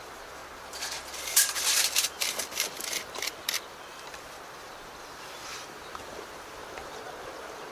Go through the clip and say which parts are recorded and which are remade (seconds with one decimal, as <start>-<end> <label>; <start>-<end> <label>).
0.0-0.4 remade; 0.4-5.0 recorded; 5.0-6.6 remade; 6.6-7.7 recorded